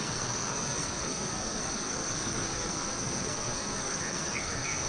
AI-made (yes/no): yes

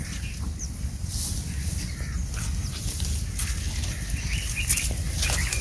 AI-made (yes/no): no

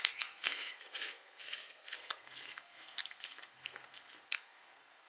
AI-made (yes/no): yes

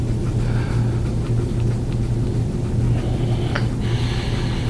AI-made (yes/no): no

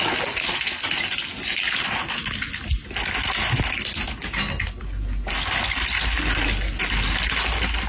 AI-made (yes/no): no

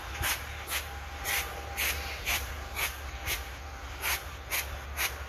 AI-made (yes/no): no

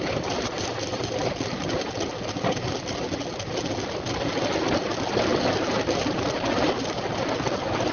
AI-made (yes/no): no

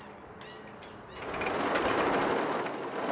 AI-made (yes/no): no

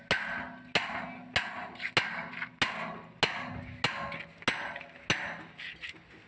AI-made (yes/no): no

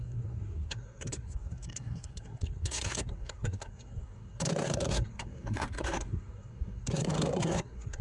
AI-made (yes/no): yes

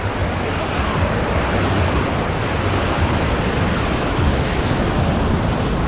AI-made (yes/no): no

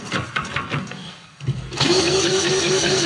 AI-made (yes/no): yes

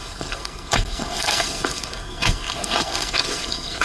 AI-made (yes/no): yes